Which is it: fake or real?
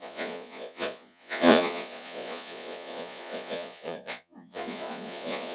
fake